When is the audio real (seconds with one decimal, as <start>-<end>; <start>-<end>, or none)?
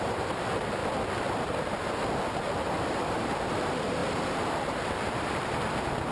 0.8-2.8